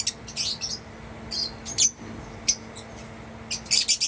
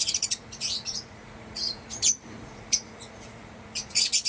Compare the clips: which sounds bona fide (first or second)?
first